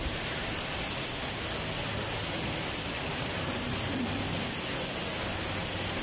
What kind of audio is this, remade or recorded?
recorded